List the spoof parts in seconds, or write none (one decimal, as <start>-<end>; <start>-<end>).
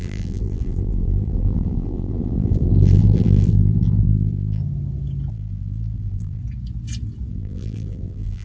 0.0-4.6; 5.3-6.4; 7.3-8.4